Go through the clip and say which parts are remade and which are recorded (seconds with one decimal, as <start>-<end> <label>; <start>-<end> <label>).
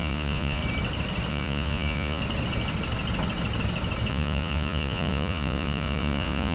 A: 0.0-0.6 remade; 0.6-1.3 recorded; 1.3-2.2 remade; 2.2-4.1 recorded; 4.1-6.5 remade